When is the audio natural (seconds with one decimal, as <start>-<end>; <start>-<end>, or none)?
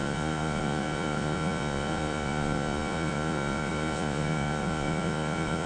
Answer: none